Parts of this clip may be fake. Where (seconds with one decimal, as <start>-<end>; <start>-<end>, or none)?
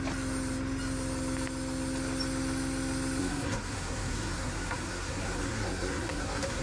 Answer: 3.2-6.6